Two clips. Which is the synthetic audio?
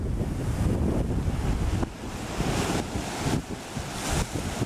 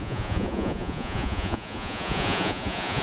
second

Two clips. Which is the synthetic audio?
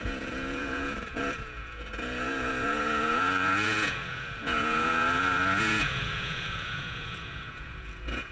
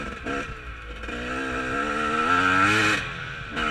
first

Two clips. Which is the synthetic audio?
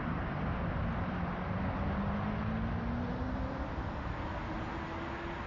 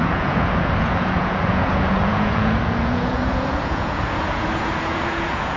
second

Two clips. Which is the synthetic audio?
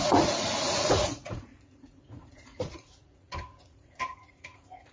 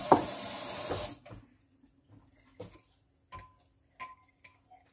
first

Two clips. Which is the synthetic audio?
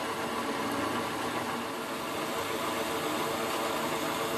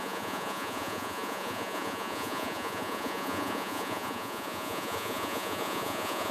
second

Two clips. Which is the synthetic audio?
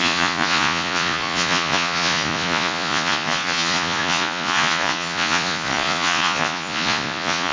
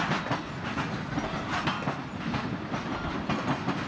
first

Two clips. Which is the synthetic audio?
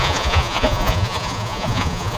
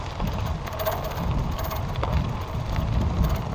first